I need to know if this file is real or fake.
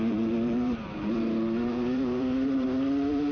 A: fake